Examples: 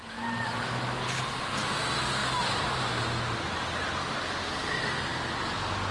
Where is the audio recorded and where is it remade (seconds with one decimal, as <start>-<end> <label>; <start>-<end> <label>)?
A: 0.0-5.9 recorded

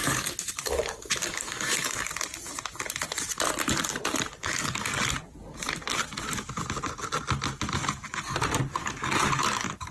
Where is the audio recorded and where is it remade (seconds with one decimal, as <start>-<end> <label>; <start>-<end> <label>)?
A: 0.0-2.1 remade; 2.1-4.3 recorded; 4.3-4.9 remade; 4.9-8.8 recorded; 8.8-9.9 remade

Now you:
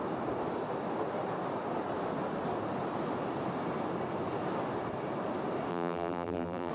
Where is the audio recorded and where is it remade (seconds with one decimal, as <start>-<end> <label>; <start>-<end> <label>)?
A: 0.0-5.7 recorded; 5.7-6.7 remade

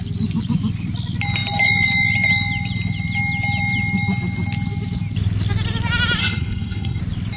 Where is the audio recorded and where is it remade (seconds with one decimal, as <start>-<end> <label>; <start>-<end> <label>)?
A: 0.0-6.2 recorded; 6.2-7.0 remade; 7.0-7.4 recorded

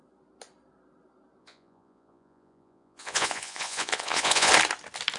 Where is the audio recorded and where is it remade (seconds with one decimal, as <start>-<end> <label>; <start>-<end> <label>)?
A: 0.0-1.4 recorded; 1.4-4.5 remade; 4.5-5.2 recorded